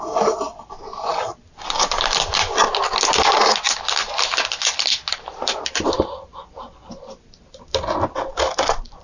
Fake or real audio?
real